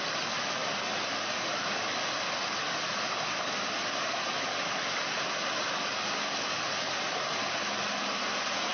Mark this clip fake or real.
real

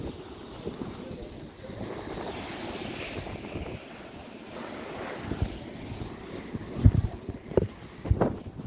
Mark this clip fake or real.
real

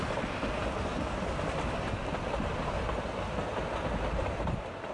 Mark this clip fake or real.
real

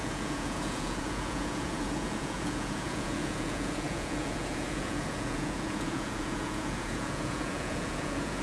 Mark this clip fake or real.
fake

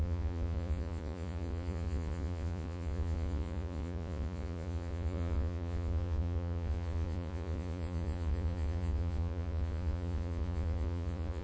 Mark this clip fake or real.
fake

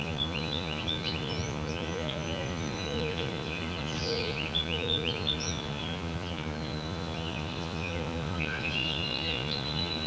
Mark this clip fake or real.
fake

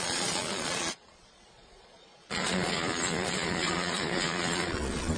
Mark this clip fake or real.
fake